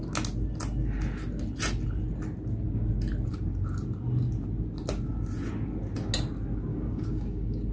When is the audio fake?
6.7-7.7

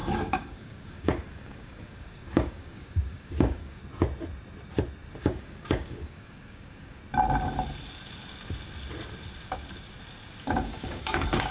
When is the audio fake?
0.0-3.8; 5.2-7.0; 10.4-11.5

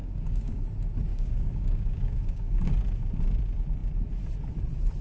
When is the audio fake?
0.0-0.6; 1.1-2.7

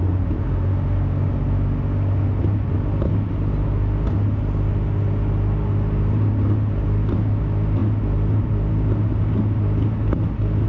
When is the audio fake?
none